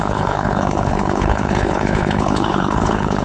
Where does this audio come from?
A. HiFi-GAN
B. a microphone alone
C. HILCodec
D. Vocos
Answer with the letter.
C